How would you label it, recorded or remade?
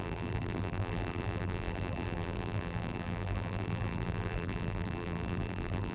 remade